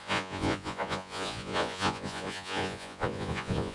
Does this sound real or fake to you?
fake